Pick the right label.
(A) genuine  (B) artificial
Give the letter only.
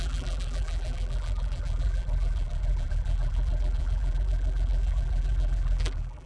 B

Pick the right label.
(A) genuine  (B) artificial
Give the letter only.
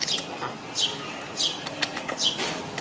A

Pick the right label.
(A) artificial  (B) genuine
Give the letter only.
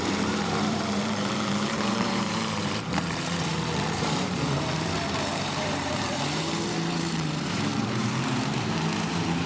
A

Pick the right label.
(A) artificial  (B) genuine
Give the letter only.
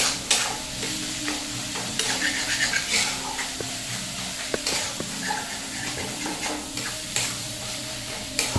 A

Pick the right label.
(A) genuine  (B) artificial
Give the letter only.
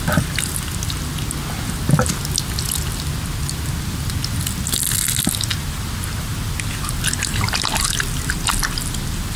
A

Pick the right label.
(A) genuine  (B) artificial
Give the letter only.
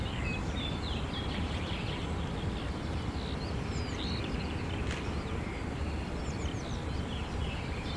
B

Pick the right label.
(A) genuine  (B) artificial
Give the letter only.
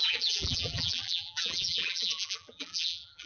B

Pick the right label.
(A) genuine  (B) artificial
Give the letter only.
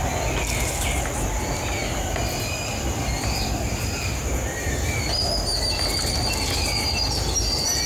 A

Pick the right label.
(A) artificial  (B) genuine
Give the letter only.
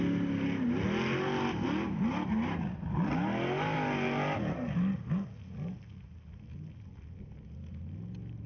B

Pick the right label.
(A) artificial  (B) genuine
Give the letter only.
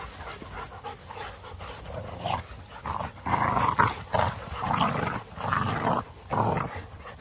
B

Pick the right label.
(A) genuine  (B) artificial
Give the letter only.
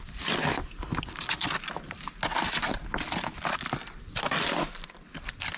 A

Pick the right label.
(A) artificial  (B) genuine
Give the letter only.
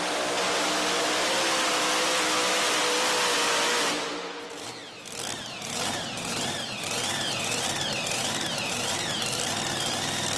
B